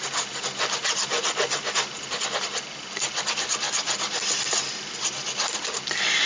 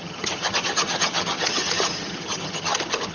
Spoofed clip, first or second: second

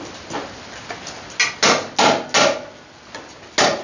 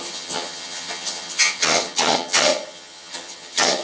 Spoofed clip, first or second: second